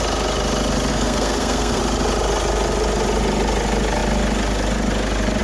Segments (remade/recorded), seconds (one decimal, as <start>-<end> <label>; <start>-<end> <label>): 0.0-0.9 recorded; 0.9-1.8 remade; 1.8-5.4 recorded